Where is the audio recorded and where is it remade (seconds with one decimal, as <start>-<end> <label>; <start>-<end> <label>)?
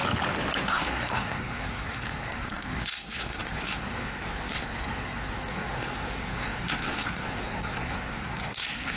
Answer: 0.0-0.7 recorded; 0.7-9.0 remade